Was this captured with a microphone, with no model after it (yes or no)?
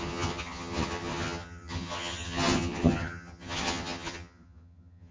no